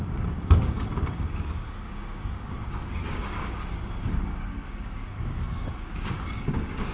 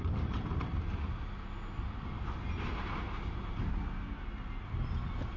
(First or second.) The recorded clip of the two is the second